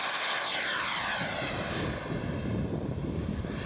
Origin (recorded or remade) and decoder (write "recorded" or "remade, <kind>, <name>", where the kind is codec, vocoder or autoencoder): recorded